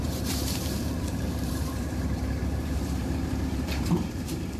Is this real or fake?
fake